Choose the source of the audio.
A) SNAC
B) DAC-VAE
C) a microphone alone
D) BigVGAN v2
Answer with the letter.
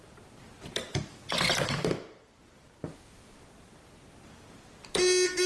C